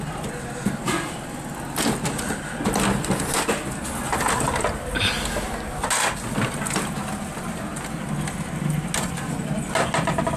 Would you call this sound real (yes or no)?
yes